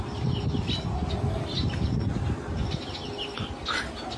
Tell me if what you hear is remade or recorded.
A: recorded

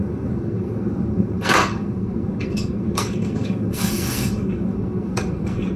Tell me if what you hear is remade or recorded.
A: remade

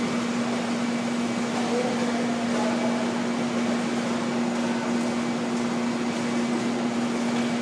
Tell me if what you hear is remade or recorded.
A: recorded